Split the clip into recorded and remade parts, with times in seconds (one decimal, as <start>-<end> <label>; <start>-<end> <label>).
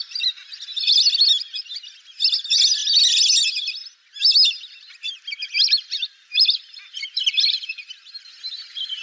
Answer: 0.0-9.0 recorded